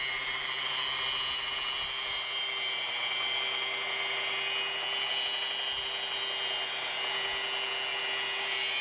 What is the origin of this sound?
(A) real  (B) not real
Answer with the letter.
A